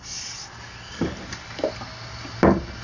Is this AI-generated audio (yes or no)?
no